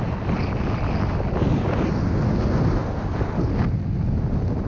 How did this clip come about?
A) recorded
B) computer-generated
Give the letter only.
A